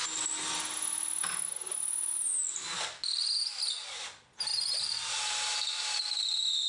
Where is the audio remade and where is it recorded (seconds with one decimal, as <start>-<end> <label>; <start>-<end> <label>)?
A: 0.0-6.7 recorded